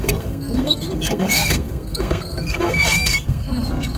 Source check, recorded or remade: remade